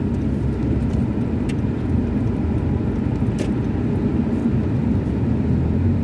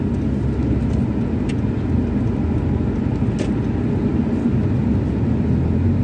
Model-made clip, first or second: first